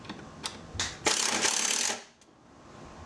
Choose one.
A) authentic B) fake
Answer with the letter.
B